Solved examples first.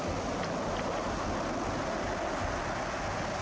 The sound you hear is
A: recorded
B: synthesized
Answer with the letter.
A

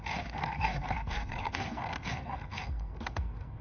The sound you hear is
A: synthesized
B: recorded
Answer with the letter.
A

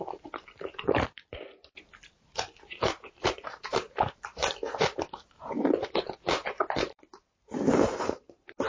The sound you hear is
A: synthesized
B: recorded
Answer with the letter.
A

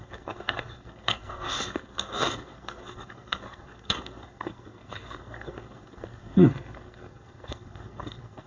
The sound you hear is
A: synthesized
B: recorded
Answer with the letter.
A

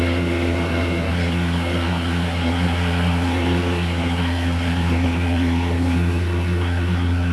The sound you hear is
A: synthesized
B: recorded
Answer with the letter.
A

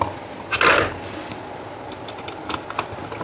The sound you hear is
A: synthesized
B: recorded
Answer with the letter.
B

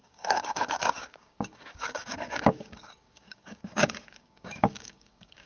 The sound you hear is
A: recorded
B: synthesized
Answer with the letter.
B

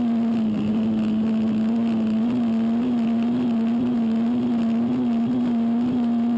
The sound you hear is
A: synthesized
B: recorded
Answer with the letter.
B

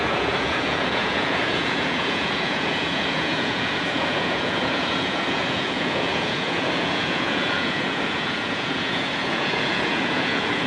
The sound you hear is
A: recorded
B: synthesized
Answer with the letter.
B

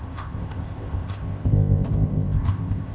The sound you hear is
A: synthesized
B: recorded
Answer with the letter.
A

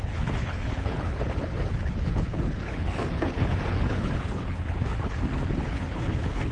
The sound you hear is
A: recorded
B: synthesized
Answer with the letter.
B